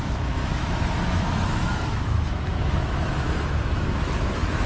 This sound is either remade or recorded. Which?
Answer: remade